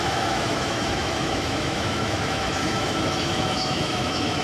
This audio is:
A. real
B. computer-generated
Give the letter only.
B